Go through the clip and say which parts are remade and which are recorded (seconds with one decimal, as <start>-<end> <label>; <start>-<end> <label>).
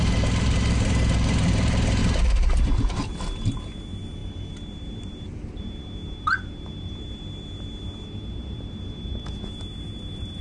0.0-10.4 remade